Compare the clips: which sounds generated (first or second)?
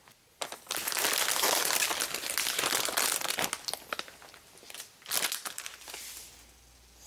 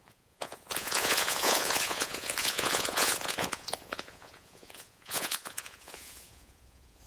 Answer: second